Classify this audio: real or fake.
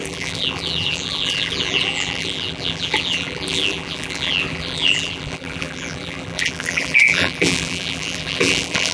fake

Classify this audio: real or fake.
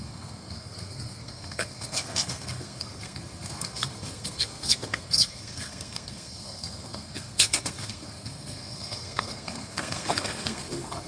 fake